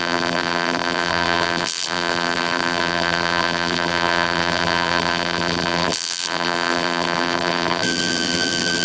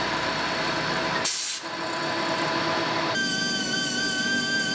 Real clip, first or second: second